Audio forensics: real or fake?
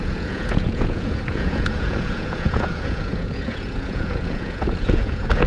fake